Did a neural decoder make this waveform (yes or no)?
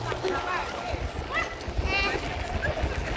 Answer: no